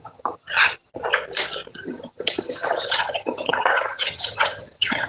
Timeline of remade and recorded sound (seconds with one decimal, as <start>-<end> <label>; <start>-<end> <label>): 0.0-0.9 remade; 0.9-1.7 recorded; 1.7-5.1 remade